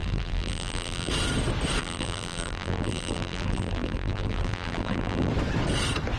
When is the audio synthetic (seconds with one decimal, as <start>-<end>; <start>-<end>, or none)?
0.0-1.1; 1.8-5.3